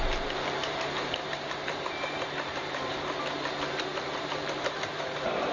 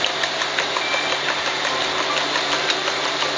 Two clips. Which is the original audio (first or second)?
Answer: second